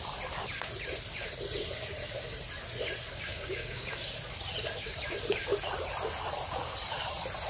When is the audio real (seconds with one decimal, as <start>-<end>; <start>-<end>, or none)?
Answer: 0.0-3.1; 3.9-7.5